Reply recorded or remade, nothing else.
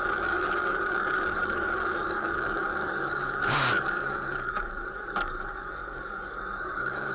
remade